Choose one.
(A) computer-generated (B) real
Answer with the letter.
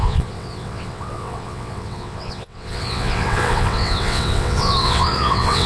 A